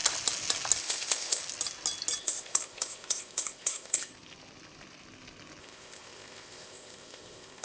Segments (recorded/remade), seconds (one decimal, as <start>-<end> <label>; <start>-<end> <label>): 0.0-0.8 recorded; 0.8-1.4 remade; 1.4-2.2 recorded; 2.2-4.1 remade; 4.1-5.6 recorded; 5.6-7.6 remade

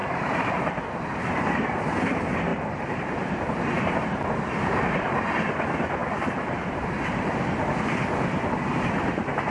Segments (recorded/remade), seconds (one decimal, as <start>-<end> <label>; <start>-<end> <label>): 0.0-0.8 remade; 0.8-2.5 recorded; 2.5-4.0 remade; 4.0-9.5 recorded

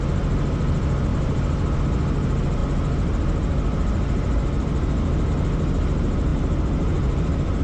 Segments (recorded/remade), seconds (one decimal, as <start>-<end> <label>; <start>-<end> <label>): 0.0-1.1 recorded; 1.1-1.8 remade; 1.8-7.6 recorded

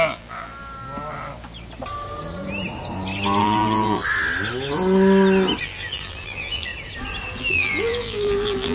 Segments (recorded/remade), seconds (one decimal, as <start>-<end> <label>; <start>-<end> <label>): 0.0-0.6 remade; 0.6-3.4 recorded; 3.4-4.0 remade; 4.0-5.6 recorded; 5.6-6.7 remade; 6.7-7.4 recorded; 7.4-8.7 remade

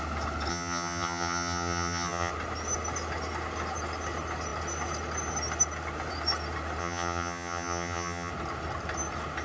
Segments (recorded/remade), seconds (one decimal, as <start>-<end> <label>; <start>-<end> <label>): 0.0-0.5 recorded; 0.5-2.3 remade; 2.3-6.8 recorded; 6.8-8.3 remade; 8.3-9.4 recorded

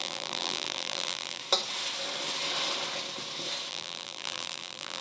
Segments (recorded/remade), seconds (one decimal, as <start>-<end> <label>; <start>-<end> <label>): 0.0-1.4 remade; 1.4-3.7 recorded; 3.7-5.0 remade